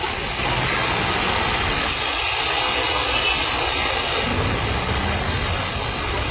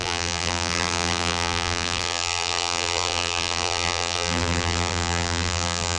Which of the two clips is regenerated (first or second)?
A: second